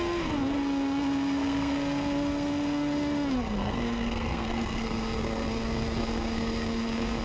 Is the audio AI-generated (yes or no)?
yes